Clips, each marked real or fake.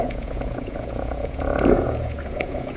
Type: fake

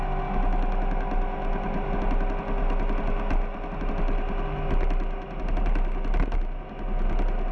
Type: real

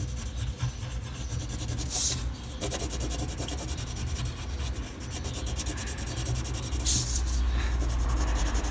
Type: real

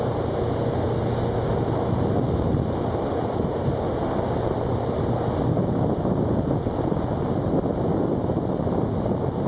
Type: real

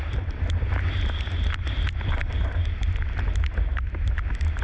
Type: real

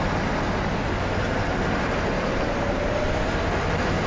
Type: real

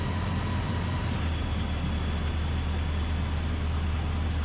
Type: real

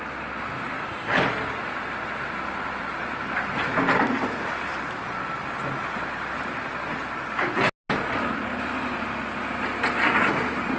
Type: real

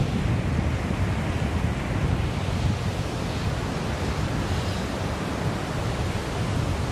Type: real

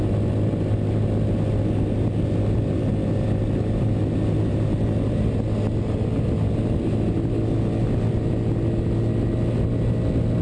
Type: real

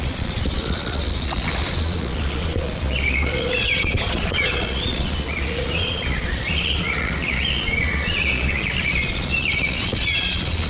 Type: fake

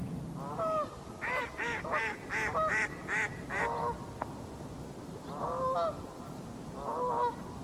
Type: real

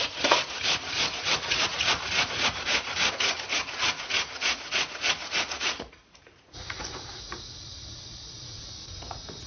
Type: fake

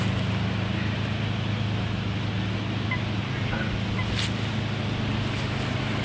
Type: real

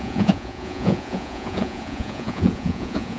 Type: fake